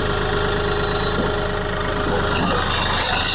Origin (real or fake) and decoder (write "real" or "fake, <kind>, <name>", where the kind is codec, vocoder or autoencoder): real